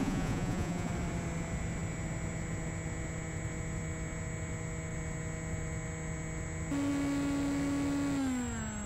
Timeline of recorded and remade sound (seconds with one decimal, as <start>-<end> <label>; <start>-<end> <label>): 0.0-0.9 remade; 0.9-8.9 recorded